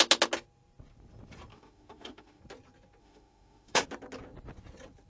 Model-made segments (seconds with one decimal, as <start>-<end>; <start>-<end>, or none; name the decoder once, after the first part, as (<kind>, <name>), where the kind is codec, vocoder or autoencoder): 1.5-2.4 (autoencoder, DAC-VAE); 3.0-3.8